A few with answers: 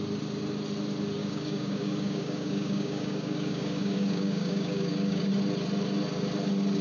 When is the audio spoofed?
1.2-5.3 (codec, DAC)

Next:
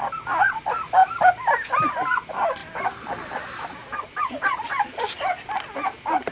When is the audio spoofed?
none

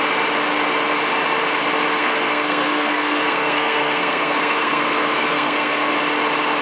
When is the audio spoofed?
1.9-5.9 (codec, SNAC)

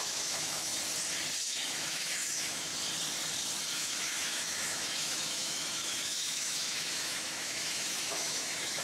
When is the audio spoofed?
0.0-0.7 (autoencoder, DAC-VAE); 1.4-2.7; 3.7-8.8